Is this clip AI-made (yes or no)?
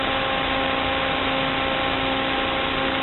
no